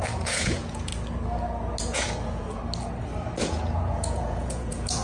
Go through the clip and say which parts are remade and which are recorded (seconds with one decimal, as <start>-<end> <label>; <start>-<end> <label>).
0.0-0.9 remade; 0.9-1.8 recorded; 1.8-2.6 remade; 2.6-3.4 recorded; 3.4-5.0 remade